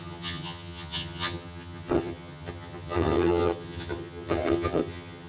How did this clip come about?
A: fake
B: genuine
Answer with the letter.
A